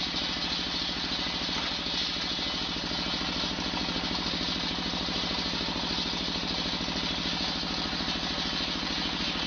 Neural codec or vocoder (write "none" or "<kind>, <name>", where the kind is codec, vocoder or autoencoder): none